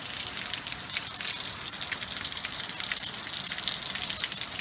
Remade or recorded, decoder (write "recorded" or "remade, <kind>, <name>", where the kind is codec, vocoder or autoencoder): recorded